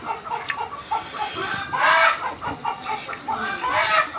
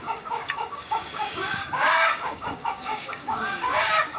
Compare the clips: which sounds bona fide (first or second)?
first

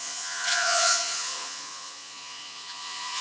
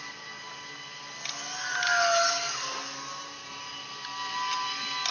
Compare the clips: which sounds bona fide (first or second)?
second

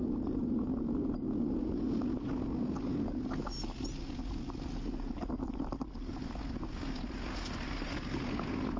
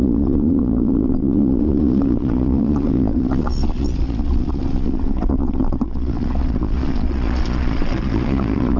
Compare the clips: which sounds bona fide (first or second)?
first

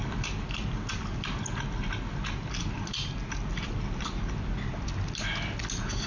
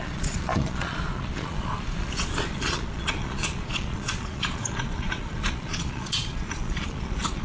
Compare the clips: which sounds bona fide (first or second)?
first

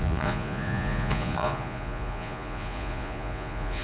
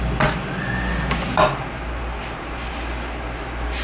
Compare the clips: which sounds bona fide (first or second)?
second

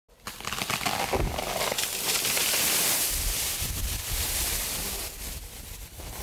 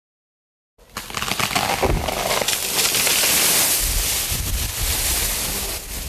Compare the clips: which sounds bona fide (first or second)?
second